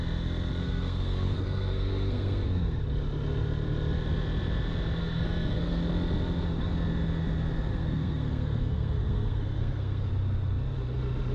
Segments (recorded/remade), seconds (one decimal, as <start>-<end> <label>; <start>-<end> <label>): 0.0-0.6 recorded; 0.6-2.8 remade; 2.8-5.0 recorded; 5.0-5.8 remade; 5.8-7.7 recorded; 7.7-10.1 remade; 10.1-11.3 recorded